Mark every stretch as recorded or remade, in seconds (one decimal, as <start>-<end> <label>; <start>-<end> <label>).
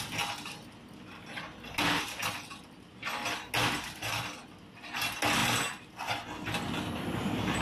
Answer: 0.0-7.6 recorded